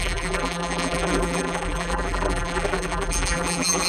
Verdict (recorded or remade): remade